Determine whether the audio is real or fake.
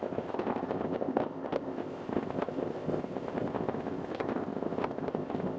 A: fake